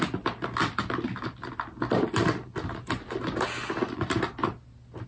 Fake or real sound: real